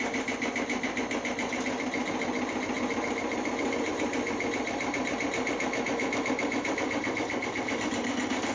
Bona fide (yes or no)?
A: yes